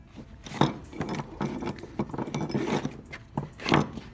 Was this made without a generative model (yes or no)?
yes